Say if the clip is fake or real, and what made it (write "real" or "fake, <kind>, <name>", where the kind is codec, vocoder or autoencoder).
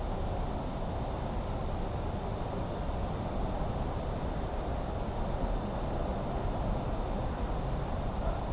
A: real